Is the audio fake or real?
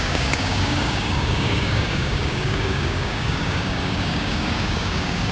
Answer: fake